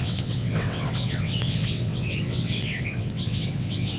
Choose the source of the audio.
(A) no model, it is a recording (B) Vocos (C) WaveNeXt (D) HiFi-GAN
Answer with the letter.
C